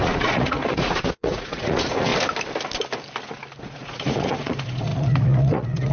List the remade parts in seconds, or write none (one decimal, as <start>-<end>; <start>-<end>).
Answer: 0.0-2.1; 3.6-5.9